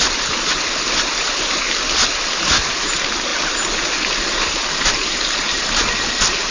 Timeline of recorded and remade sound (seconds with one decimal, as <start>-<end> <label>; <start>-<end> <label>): 0.0-6.5 recorded